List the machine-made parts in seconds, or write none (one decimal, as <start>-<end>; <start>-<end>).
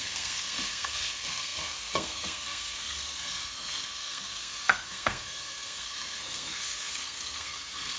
0.0-8.0